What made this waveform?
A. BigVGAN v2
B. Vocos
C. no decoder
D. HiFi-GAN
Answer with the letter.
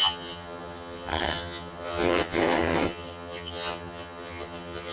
D